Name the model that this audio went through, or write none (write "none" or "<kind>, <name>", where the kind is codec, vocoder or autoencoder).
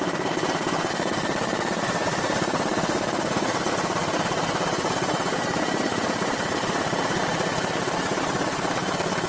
vocoder, BigVGAN v2